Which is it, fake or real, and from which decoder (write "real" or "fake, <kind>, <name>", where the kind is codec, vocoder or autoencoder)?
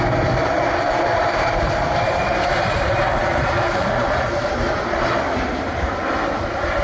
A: fake, vocoder, BigVGAN v2